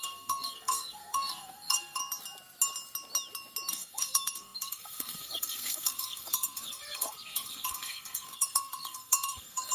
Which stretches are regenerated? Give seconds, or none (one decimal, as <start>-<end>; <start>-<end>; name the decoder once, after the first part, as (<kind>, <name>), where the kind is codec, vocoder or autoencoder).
0.0-2.0 (codec, SNAC); 3.7-9.7